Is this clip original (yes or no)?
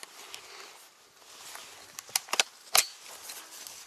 yes